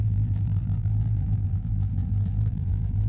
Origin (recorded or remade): remade